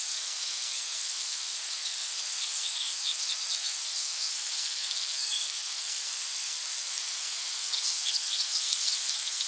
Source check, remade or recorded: remade